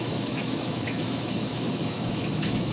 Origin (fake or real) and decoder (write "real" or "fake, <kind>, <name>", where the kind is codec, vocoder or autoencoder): fake, autoencoder, DAC-VAE